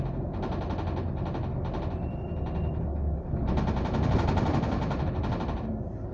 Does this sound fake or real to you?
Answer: real